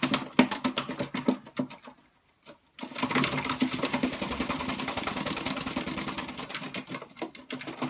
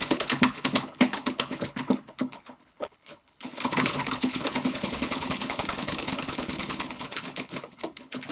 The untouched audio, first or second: first